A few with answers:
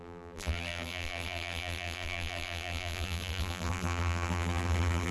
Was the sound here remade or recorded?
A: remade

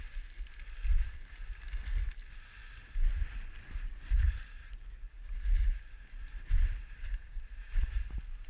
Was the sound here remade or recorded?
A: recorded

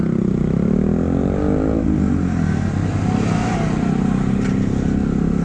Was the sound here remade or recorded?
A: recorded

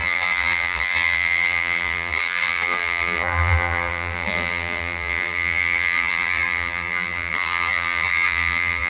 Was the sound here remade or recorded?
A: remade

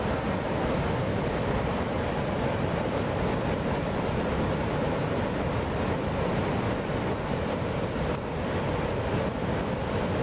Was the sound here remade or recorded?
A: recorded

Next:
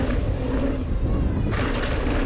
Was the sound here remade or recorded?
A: recorded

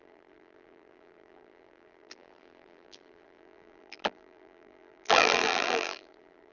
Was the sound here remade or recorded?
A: remade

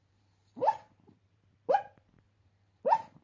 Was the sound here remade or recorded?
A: remade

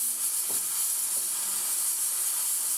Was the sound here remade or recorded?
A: recorded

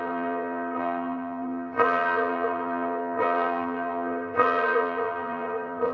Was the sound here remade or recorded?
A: remade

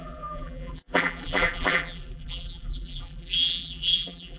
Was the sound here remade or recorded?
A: remade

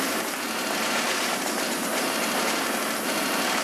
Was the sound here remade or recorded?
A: remade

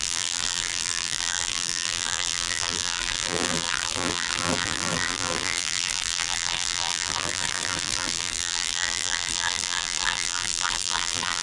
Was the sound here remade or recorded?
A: remade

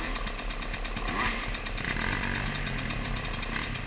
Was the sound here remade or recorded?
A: remade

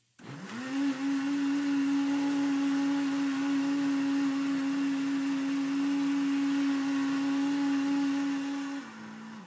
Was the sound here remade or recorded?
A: recorded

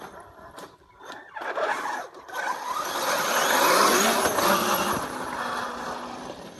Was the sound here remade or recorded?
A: recorded